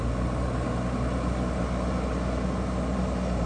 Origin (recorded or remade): recorded